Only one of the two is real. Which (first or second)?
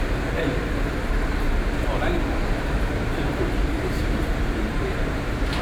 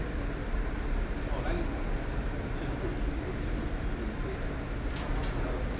second